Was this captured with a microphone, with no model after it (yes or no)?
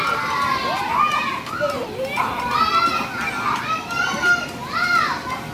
yes